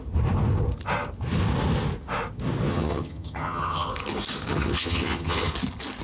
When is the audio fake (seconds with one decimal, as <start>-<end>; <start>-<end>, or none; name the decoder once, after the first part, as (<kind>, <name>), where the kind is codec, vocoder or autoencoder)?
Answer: 2.7-3.9 (vocoder, HiFi-GAN); 4.5-5.5